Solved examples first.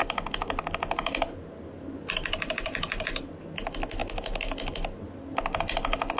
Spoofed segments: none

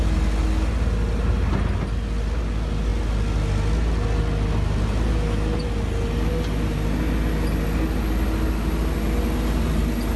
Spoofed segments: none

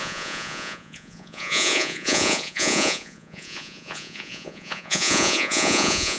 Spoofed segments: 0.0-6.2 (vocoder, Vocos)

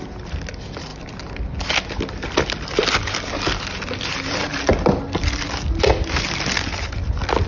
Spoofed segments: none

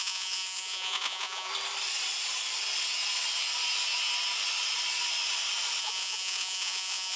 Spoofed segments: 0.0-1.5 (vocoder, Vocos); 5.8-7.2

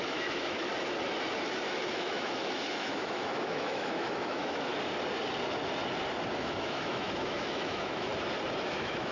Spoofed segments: 0.0-0.7 (autoencoder, DAC-VAE); 1.9-4.7; 6.4-8.1; 8.6-9.1

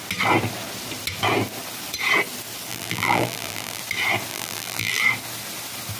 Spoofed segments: 2.7-3.8 (vocoder, BigVGAN v2); 4.3-5.0

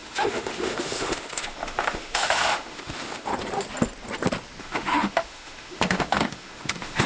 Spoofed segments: 0.0-3.3 (autoencoder, DAC-VAE); 4.6-7.1